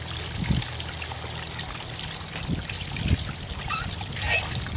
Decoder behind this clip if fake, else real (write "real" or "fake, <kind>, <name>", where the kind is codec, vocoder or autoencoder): real